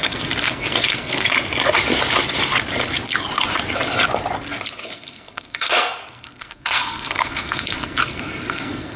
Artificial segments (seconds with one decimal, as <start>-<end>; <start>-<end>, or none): 0.0-1.3; 4.8-9.0